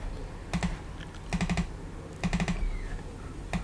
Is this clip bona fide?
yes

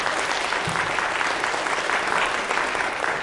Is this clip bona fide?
yes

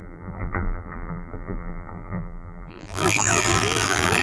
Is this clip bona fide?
no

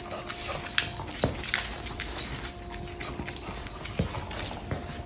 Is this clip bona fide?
yes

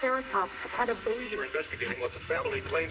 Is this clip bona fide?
no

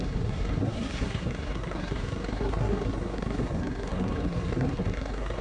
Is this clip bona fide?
no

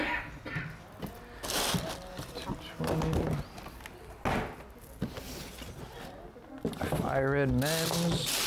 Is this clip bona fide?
yes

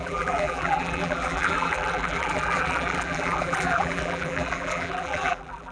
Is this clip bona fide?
no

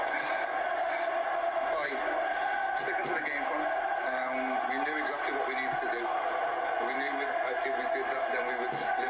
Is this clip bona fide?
yes